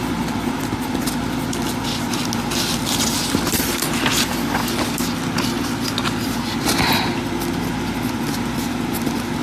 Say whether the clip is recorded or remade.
recorded